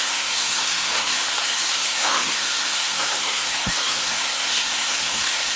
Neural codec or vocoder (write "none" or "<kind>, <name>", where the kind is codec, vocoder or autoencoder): codec, SNAC